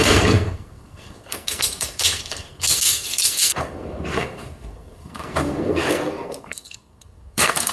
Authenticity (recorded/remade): remade